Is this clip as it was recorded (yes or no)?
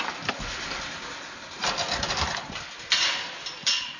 yes